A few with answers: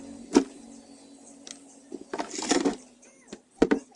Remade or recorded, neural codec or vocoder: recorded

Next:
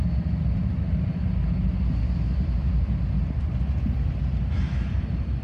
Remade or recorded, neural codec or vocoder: recorded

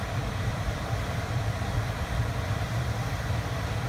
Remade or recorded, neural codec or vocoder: remade, vocoder, BigVGAN v2